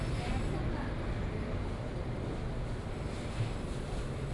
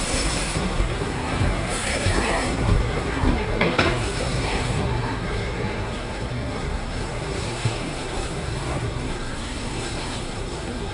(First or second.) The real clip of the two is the first